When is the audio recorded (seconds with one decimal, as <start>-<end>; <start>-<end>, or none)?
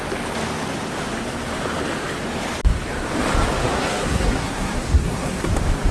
0.0-3.6; 5.5-5.9